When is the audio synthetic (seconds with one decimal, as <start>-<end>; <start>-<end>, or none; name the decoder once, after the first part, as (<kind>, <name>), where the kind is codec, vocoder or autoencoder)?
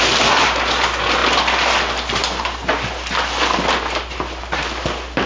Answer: none